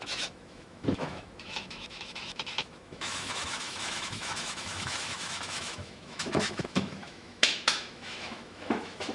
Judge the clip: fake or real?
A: fake